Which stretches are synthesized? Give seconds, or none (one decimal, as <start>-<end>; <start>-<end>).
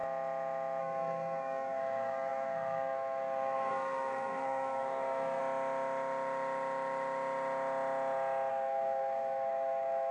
0.8-5.4; 8.5-10.1